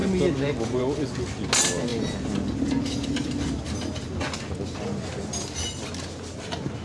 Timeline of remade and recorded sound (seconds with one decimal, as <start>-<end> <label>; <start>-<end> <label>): 0.0-6.8 recorded